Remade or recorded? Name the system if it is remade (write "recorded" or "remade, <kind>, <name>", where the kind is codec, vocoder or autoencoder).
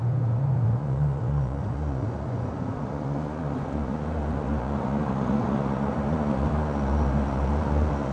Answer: remade, vocoder, Vocos